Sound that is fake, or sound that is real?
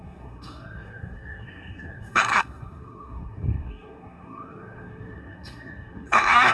fake